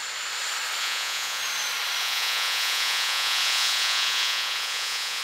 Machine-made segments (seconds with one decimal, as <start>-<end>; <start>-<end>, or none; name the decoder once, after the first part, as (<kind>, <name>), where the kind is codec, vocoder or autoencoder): 0.8-1.4 (vocoder, Vocos); 2.0-5.2